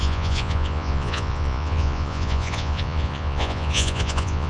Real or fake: fake